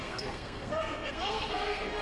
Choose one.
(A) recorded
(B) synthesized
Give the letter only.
B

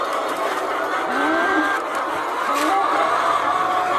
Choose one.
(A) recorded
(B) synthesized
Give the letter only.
A